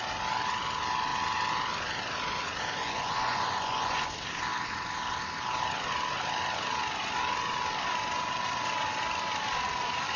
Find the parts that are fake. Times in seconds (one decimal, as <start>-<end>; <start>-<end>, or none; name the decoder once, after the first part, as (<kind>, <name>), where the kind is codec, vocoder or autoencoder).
2.8-4.1 (vocoder, Vocos)